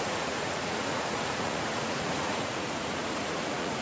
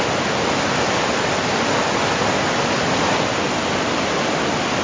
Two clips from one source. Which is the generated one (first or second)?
first